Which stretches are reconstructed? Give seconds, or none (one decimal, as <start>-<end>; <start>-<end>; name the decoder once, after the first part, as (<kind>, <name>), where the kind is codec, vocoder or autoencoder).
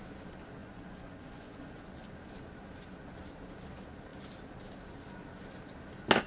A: 0.6-1.8 (vocoder, Vocos)